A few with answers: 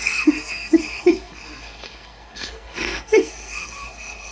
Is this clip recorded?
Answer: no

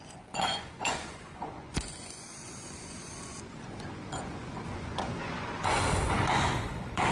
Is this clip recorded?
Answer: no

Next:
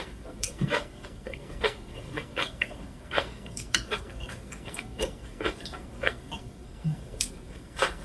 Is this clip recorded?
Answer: no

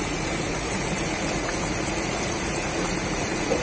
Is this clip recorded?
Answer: no